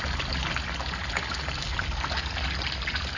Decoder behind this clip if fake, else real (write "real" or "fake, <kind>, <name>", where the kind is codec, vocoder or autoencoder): real